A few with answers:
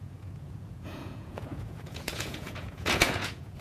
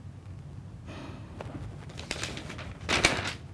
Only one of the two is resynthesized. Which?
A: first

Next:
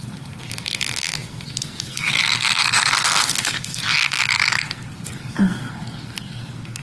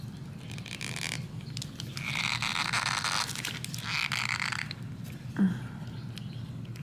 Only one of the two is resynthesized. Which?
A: first